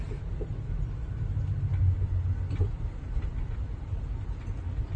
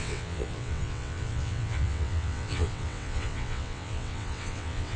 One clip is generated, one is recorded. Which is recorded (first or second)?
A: first